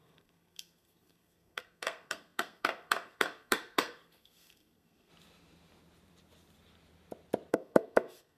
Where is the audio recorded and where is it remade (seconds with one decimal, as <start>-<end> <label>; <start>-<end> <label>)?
0.0-5.1 remade; 5.1-7.5 recorded; 7.5-8.4 remade